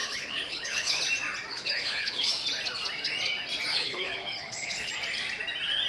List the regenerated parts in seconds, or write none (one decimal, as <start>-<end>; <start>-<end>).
0.0-1.0; 1.5-2.3; 3.7-4.9